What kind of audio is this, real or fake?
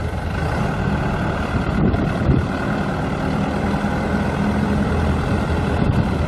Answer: real